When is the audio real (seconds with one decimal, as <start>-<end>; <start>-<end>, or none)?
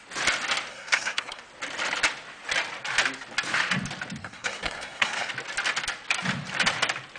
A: 0.0-0.7; 1.4-4.2; 5.3-7.2